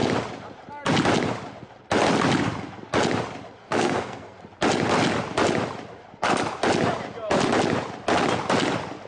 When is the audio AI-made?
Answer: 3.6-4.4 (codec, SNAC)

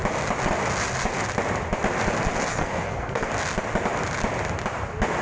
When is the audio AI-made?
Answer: 2.5-3.3 (codec, SNAC)

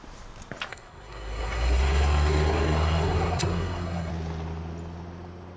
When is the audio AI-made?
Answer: 0.7-4.1 (codec, SNAC)

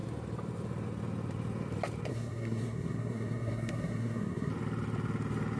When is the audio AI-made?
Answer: 2.1-4.5 (codec, SNAC)